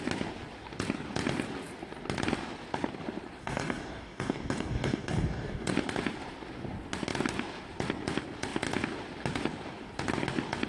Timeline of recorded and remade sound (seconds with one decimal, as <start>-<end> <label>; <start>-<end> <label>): 0.0-3.4 recorded; 3.4-5.7 remade; 5.7-10.7 recorded